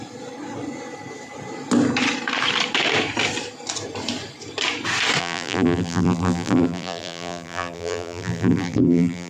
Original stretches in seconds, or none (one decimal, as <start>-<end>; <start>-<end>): 0.0-5.2